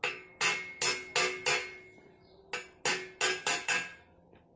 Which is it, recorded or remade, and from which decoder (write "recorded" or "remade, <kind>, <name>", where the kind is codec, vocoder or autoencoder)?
recorded